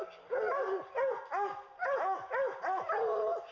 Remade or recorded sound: recorded